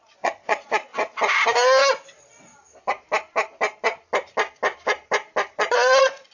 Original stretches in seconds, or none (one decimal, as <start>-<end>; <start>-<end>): 0.9-2.2; 2.6-5.5